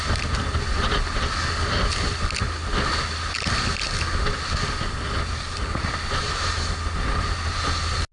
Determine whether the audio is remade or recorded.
recorded